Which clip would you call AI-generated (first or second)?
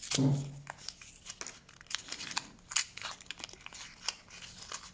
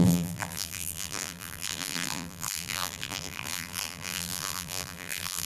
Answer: second